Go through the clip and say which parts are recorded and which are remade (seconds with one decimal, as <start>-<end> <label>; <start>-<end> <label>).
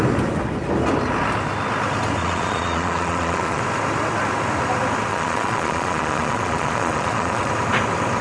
0.0-2.2 recorded; 2.2-3.6 remade; 3.6-5.1 recorded; 5.1-7.5 remade; 7.5-8.2 recorded